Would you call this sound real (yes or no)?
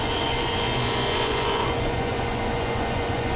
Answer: no